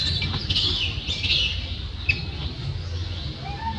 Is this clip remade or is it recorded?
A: recorded